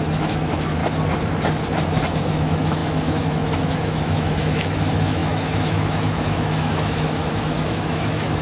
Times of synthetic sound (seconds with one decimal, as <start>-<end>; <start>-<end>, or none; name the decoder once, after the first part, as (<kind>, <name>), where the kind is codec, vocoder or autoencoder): 0.0-0.8 (autoencoder, DAC-VAE); 2.2-8.4

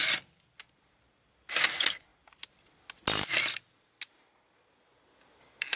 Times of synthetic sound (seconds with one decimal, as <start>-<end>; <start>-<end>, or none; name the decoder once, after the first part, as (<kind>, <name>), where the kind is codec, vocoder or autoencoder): none

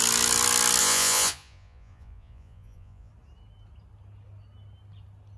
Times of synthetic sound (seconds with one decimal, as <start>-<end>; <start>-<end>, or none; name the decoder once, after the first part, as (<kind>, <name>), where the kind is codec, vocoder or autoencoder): 0.8-3.1 (vocoder, Vocos)

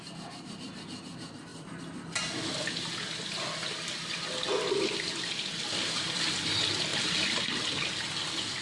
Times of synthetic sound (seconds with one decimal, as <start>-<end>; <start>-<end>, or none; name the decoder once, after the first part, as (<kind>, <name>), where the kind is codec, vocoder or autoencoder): none

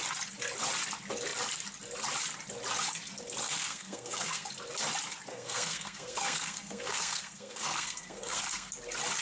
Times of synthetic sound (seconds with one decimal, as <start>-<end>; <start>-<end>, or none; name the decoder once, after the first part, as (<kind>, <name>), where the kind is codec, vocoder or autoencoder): 3.4-4.5 (codec, SNAC); 5.3-8.7

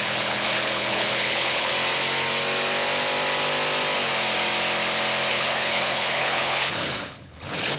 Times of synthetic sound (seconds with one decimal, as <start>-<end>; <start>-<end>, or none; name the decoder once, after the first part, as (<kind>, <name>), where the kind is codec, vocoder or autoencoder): 0.0-1.7 (codec, HILCodec); 5.3-7.8

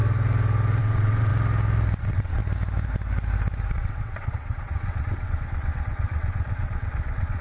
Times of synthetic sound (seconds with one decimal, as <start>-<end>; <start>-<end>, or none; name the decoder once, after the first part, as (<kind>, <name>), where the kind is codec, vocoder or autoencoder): 0.8-1.3 (vocoder, WaveNeXt); 2.0-2.4; 3.7-7.4